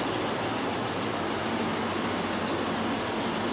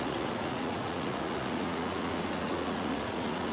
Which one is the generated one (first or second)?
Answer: second